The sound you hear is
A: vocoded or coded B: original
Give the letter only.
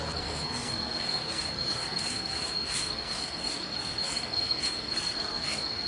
A